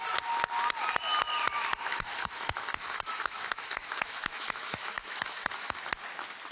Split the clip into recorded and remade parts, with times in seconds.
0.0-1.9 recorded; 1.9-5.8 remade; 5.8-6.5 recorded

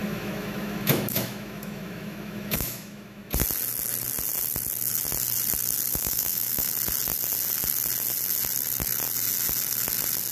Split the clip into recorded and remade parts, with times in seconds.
0.0-3.3 remade; 3.3-5.9 recorded; 5.9-6.7 remade; 6.7-10.3 recorded

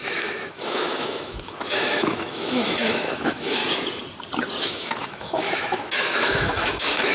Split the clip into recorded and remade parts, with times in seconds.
0.0-3.6 remade; 3.6-4.6 recorded; 4.6-7.1 remade

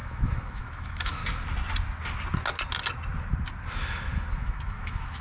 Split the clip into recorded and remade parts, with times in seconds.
0.0-1.2 remade; 1.2-4.3 recorded; 4.3-5.2 remade

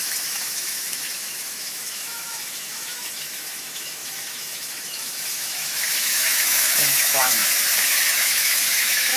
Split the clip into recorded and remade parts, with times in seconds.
0.0-9.2 remade